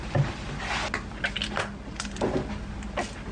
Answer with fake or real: real